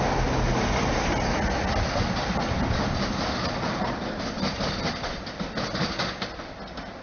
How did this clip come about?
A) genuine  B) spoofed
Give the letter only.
A